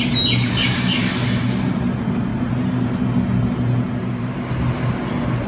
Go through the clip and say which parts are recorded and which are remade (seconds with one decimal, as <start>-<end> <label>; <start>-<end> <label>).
0.0-5.5 recorded